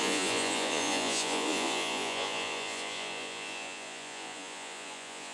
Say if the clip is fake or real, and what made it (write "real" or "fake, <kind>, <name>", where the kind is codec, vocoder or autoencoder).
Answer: fake, vocoder, Vocos